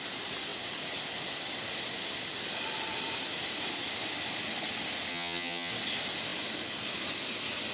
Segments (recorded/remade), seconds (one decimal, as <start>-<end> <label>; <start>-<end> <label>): 0.0-5.1 recorded; 5.1-5.7 remade; 5.7-7.7 recorded